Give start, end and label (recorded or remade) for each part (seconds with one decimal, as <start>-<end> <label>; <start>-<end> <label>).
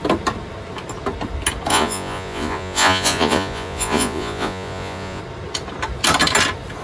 0.0-1.7 recorded; 1.7-5.2 remade; 5.2-6.8 recorded